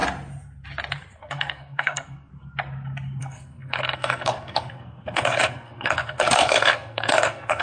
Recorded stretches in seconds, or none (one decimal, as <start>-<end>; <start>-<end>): 0.0-1.2; 2.3-3.2